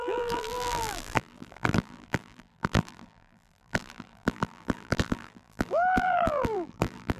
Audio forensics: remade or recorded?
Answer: remade